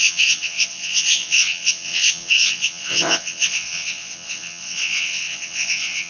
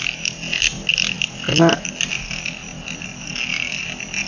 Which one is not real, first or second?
first